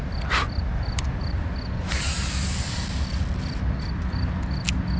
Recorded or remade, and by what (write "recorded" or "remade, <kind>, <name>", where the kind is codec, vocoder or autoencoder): recorded